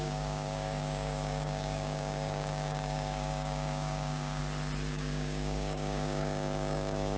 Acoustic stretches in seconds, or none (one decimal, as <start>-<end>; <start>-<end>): 4.4-4.9